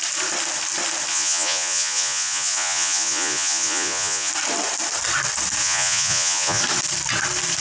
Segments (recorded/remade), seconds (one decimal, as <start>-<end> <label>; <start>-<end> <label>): 0.0-1.1 recorded; 1.1-4.3 remade; 4.3-5.6 recorded; 5.6-6.6 remade; 6.6-7.6 recorded